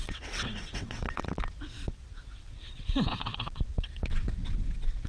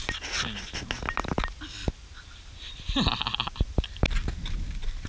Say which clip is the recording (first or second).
second